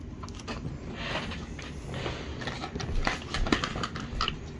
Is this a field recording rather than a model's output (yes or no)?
yes